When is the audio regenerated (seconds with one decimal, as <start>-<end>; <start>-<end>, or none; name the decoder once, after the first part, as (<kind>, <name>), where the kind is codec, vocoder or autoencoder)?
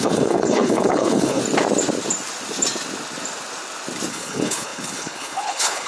0.0-1.4 (codec, HILCodec); 4.1-5.9